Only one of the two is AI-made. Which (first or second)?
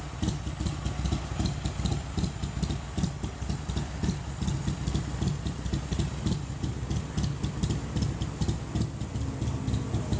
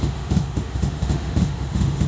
second